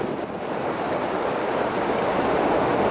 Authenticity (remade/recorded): recorded